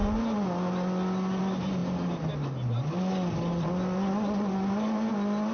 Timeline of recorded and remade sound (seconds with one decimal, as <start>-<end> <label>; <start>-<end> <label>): 0.0-5.5 recorded